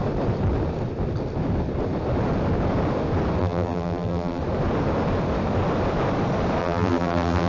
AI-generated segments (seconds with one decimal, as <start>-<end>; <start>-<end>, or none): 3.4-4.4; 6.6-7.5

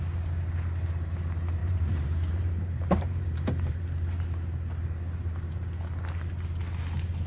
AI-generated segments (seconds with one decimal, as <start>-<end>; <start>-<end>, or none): 1.6-3.8

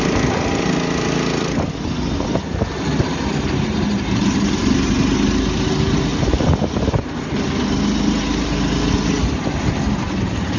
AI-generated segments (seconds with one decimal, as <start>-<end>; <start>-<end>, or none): 6.1-7.0

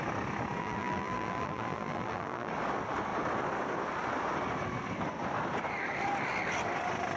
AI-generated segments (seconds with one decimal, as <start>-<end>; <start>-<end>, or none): 0.6-2.5